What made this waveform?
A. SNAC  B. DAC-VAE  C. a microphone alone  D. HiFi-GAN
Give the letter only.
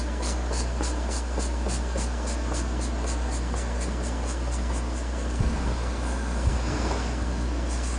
A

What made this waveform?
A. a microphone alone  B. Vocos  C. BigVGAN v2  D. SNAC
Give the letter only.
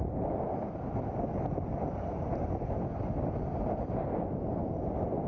A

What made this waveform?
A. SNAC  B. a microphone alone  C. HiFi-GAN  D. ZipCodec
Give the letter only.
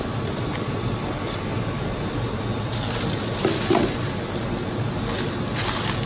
B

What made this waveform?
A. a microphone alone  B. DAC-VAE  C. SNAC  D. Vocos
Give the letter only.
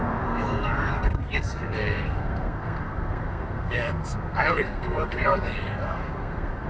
C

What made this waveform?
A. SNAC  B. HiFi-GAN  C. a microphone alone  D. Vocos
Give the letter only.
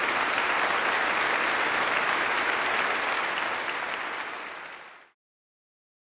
C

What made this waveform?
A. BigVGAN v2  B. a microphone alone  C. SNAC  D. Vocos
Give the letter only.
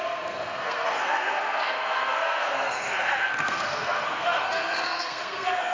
C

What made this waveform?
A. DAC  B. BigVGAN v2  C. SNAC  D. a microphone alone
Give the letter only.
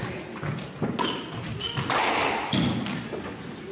D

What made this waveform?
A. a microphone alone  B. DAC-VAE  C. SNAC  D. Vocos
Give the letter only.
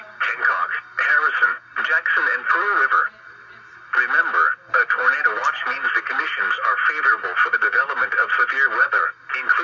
A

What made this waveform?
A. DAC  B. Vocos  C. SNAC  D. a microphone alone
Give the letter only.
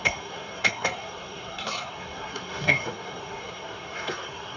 C